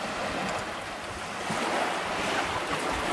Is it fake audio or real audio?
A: real